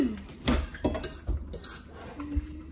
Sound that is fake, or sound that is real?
real